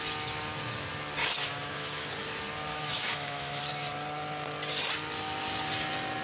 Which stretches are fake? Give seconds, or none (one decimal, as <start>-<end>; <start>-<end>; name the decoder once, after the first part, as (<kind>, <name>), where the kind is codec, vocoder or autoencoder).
1.2-2.1 (autoencoder, DAC-VAE); 2.7-3.6